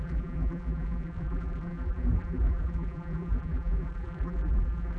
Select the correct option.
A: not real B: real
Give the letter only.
A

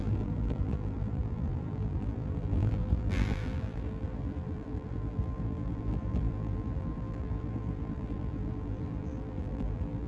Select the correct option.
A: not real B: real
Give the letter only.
A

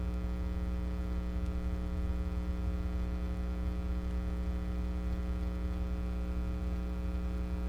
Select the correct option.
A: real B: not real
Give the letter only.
A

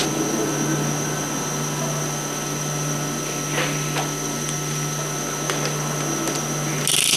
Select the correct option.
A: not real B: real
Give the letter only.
B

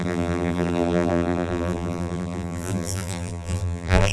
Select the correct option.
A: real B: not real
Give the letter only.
B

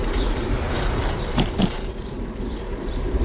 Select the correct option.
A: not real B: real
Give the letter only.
A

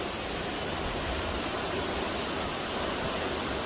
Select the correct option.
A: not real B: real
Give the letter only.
A